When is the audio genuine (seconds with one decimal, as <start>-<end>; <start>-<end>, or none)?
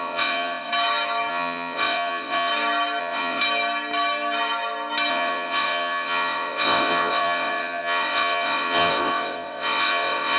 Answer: 0.7-1.3; 2.5-3.0; 3.4-5.1